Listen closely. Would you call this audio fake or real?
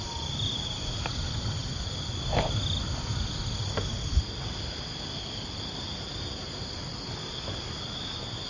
real